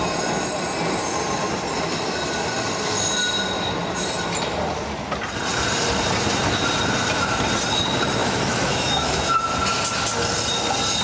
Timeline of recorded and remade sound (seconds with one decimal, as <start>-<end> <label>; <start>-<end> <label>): 0.0-8.2 recorded; 8.2-9.3 remade; 9.3-11.0 recorded